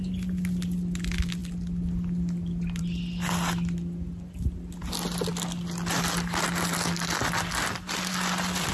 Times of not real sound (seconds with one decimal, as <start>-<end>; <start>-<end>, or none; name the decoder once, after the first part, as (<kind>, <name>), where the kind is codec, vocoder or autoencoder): none